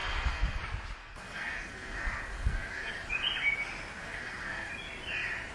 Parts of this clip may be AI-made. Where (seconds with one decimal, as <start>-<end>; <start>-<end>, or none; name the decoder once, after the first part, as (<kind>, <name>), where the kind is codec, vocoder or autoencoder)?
0.0-0.6 (codec, SNAC); 1.0-2.9; 4.0-4.7

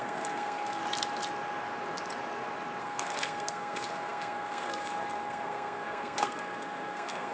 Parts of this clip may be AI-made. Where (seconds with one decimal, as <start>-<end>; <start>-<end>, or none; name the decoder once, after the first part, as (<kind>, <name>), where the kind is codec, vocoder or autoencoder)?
0.0-0.8 (codec, SNAC); 2.8-7.3

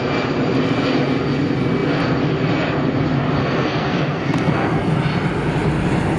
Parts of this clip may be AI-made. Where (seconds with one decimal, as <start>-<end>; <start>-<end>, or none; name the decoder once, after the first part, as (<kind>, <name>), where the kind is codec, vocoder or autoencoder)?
3.4-4.9 (codec, SNAC)

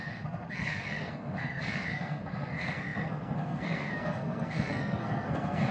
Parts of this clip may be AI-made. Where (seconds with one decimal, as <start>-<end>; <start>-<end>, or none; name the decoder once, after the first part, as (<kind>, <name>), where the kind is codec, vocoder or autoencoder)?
0.0-5.7 (codec, SNAC)

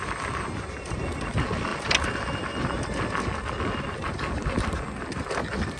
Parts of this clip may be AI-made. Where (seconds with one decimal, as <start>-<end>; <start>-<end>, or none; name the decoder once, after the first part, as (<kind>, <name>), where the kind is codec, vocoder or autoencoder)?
none

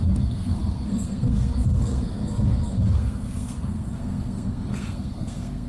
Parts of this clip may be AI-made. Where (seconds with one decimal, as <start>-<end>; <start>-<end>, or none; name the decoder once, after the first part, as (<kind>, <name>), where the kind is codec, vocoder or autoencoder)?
0.0-5.7 (codec, SNAC)

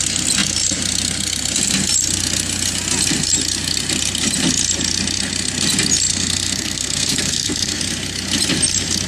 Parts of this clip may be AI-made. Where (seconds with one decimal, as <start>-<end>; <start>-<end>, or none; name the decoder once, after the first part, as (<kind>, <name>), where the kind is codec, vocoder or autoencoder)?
6.1-7.8 (codec, SNAC)

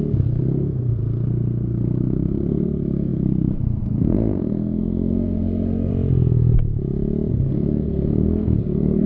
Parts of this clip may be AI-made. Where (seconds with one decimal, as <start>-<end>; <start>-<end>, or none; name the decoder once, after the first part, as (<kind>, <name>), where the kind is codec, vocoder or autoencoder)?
0.0-5.9 (codec, SNAC); 7.3-9.1